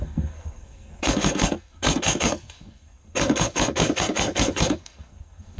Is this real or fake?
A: fake